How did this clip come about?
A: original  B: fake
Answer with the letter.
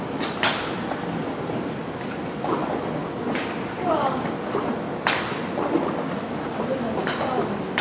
A